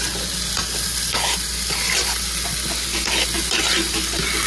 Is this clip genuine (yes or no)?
yes